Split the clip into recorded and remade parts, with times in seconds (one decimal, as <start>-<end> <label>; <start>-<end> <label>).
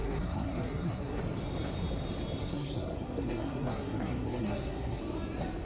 0.0-1.2 remade; 1.2-2.4 recorded; 2.4-5.0 remade; 5.0-5.6 recorded